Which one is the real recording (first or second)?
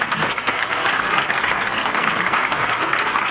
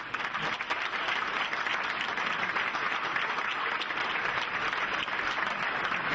second